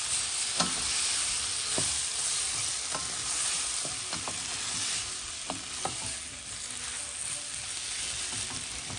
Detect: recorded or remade recorded